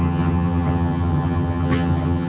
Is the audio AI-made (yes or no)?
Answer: yes